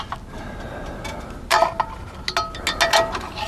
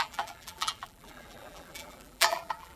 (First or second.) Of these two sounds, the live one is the first